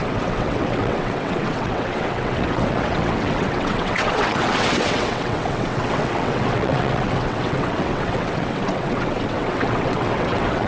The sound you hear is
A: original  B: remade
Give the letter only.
B